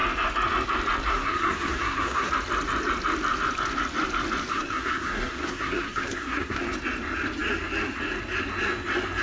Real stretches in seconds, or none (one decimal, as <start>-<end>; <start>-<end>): 0.0-1.1; 2.3-4.5; 6.6-9.2